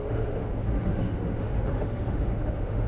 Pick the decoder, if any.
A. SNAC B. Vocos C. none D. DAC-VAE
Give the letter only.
D